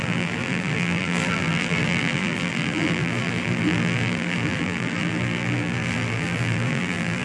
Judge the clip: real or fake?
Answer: fake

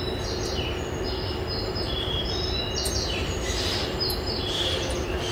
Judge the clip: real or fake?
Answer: real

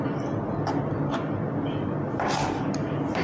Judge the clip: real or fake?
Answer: real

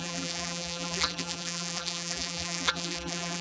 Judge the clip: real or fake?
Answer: fake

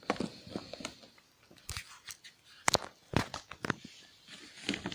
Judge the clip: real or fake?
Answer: real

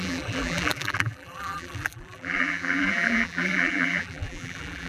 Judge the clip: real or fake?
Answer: fake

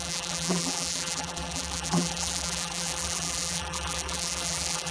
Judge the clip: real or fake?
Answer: fake